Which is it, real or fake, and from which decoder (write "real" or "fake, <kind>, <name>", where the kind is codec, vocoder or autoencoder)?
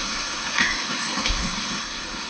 fake, codec, SNAC